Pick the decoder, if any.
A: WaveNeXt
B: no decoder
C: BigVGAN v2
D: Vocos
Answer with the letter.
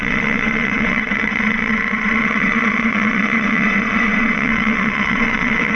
A